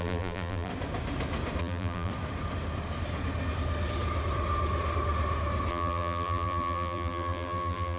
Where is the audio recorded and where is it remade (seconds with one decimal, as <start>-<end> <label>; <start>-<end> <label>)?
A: 0.0-0.7 remade; 0.7-1.6 recorded; 1.6-2.1 remade; 2.1-5.7 recorded; 5.7-8.0 remade